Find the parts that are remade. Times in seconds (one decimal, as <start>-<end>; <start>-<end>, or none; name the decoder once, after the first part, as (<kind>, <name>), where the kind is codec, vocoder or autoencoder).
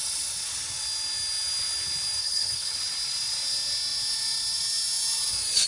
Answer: 2.2-2.8 (codec, HILCodec)